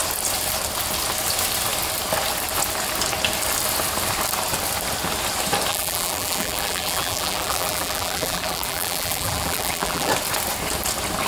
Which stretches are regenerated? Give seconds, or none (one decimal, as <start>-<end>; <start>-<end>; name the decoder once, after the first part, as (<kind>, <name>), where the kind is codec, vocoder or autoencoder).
5.7-10.1 (vocoder, BigVGAN v2)